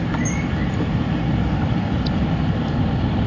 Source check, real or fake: real